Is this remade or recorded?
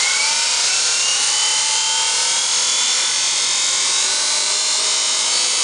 remade